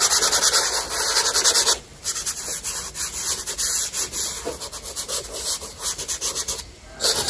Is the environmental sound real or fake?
real